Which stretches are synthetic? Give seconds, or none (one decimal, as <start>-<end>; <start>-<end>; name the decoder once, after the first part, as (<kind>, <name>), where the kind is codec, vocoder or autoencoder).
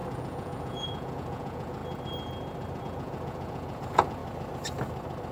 0.0-1.8 (vocoder, Vocos); 2.8-4.2